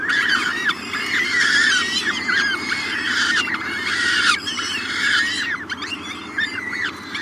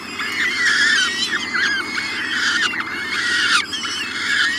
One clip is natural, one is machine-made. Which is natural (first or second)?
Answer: second